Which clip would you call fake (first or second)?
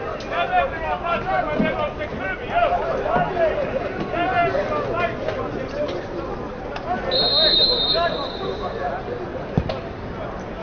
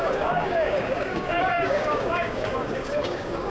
second